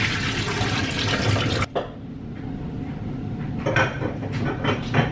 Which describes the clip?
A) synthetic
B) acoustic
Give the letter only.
B